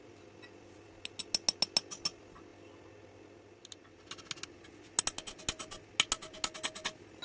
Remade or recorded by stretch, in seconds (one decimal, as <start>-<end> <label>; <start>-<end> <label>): 0.0-7.2 recorded